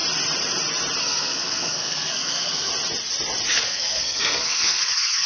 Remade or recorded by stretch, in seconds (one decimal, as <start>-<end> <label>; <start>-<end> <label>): 0.0-1.0 recorded; 1.0-2.7 remade; 2.7-3.5 recorded; 3.5-5.3 remade